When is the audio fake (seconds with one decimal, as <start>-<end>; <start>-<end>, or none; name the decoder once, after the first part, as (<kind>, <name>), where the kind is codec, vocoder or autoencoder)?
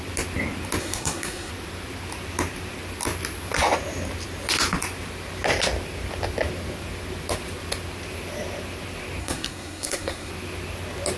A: 0.8-1.5 (codec, SNAC); 9.2-10.3